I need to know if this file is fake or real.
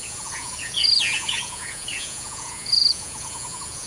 fake